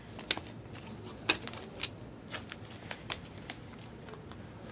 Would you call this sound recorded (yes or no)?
yes